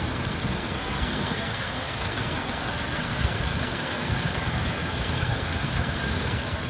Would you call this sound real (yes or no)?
no